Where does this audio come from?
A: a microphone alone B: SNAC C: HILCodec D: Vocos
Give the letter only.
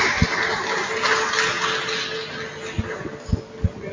A